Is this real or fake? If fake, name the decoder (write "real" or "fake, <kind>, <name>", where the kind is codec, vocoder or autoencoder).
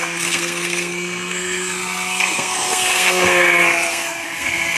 fake, codec, SNAC